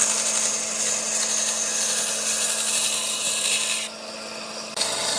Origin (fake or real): real